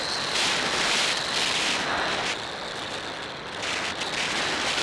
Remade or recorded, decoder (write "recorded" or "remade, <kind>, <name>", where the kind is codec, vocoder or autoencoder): recorded